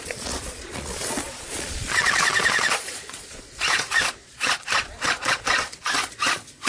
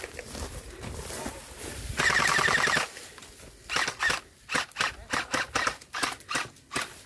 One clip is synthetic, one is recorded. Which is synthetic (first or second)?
first